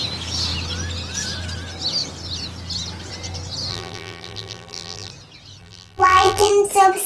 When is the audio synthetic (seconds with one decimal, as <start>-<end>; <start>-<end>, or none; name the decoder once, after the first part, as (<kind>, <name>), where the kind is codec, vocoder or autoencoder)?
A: 3.7-5.1 (vocoder, BigVGAN v2); 5.6-6.5